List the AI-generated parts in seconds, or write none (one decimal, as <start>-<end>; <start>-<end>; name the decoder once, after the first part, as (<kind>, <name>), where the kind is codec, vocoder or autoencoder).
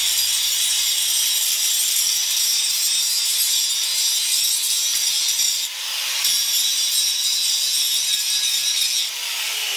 0.0-9.8 (vocoder, BigVGAN v2)